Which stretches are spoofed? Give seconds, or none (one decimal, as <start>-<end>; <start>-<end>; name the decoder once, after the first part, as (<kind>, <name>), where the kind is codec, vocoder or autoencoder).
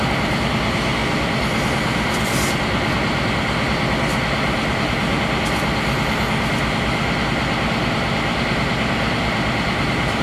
none